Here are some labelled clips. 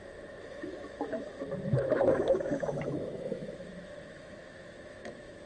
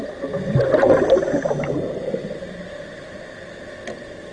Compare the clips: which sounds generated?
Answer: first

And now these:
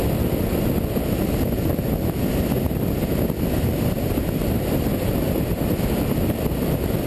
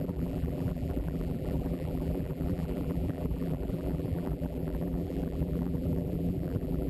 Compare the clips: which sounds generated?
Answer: second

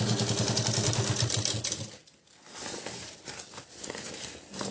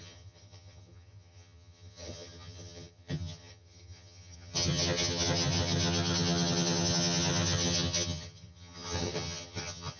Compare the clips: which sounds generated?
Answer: second